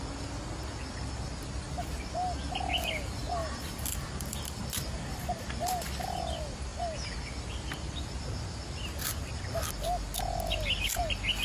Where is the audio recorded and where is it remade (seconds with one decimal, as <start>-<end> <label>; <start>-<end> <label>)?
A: 0.0-3.4 recorded; 3.4-4.6 remade; 4.6-11.4 recorded